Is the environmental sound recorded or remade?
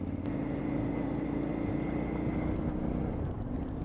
recorded